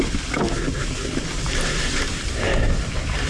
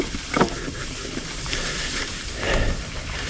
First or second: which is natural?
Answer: first